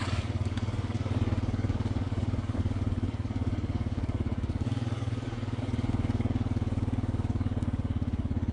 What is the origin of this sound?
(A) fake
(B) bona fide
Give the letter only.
A